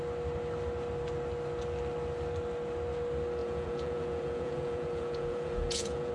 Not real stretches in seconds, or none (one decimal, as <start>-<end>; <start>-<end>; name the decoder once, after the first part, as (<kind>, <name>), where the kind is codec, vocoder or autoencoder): 3.4-6.1 (vocoder, Vocos)